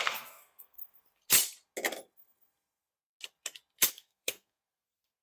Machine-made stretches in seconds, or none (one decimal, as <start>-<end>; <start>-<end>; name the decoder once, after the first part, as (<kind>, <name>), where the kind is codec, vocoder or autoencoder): 0.0-0.8 (codec, SNAC); 3.9-5.2